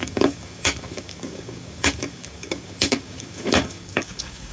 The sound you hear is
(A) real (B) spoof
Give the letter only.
B